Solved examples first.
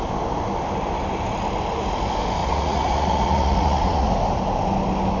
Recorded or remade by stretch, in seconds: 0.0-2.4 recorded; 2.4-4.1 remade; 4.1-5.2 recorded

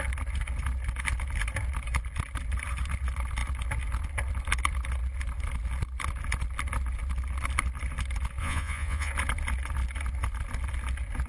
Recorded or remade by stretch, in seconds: 0.0-8.4 recorded; 8.4-9.1 remade; 9.1-11.3 recorded

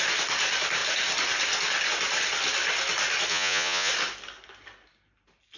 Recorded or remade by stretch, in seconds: 0.0-3.3 recorded; 3.3-3.9 remade; 3.9-5.6 recorded

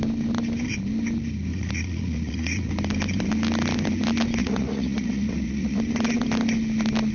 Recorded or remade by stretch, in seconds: 0.0-1.5 recorded; 1.5-2.7 remade; 2.7-4.4 recorded; 4.4-5.8 remade; 5.8-7.1 recorded

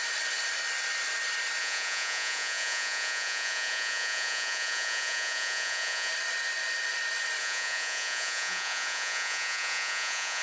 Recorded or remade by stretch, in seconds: 0.0-1.6 recorded; 1.6-6.1 remade; 6.1-7.4 recorded; 7.4-10.4 remade

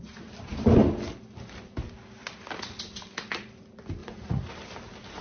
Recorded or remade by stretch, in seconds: 0.0-4.0 recorded; 4.0-4.5 remade; 4.5-5.2 recorded

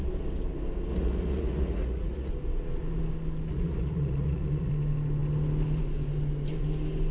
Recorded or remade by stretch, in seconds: 0.0-0.9 recorded; 0.9-2.3 remade; 2.3-3.5 recorded; 3.5-4.7 remade; 4.7-7.1 recorded

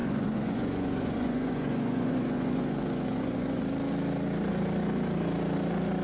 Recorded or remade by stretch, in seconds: 0.0-3.6 remade; 3.6-6.0 recorded